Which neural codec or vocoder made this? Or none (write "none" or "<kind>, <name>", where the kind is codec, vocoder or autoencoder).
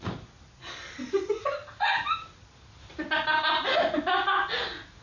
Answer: none